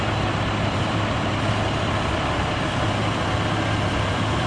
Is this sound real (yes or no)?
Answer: no